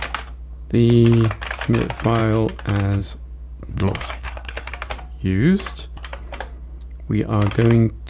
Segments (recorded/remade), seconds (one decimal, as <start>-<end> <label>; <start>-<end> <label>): 0.0-3.7 recorded; 3.7-4.7 remade; 4.7-8.1 recorded